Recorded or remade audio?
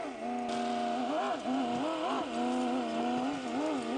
recorded